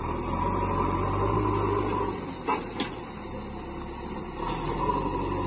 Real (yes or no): yes